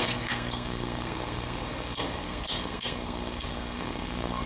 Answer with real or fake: fake